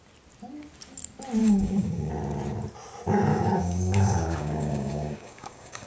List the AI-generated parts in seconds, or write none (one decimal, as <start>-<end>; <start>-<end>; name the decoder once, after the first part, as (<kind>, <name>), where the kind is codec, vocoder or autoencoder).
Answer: 1.4-2.1 (codec, DAC); 3.3-5.9